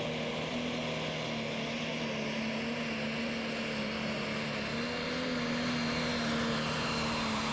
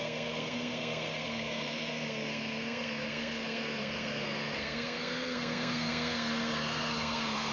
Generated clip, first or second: second